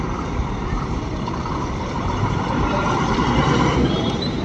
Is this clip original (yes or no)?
no